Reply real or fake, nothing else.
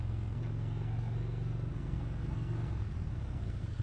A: fake